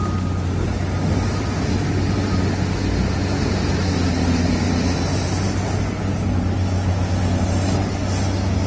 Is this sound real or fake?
real